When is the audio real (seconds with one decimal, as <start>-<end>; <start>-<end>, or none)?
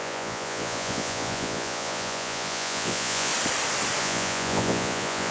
3.3-4.0